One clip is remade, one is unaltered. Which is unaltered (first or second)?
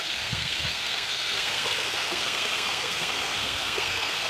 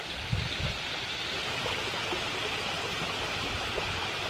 second